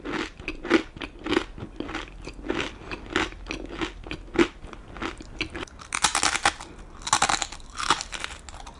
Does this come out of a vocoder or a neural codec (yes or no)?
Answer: no